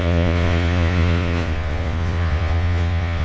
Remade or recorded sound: remade